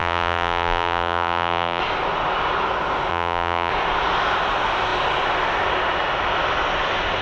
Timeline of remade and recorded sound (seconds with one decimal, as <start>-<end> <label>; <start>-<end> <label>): 0.0-1.8 remade; 1.8-3.1 recorded; 3.1-3.7 remade; 3.7-7.2 recorded